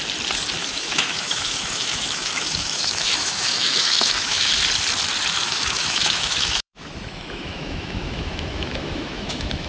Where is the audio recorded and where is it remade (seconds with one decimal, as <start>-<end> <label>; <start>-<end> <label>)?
0.0-0.6 recorded; 0.6-4.5 remade; 4.5-5.4 recorded; 5.4-9.7 remade